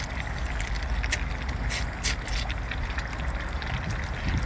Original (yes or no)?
yes